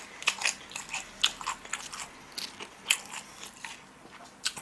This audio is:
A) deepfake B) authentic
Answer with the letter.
B